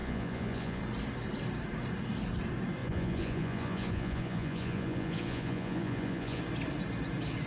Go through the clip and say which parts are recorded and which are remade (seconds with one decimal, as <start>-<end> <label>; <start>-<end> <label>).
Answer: 0.0-0.8 remade; 0.8-2.8 recorded; 2.8-6.4 remade; 6.4-7.5 recorded